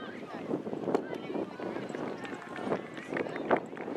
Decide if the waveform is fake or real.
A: real